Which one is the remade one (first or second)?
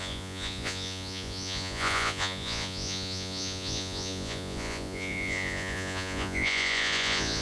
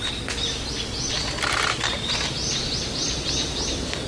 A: first